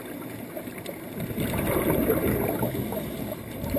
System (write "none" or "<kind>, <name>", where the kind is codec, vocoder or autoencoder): none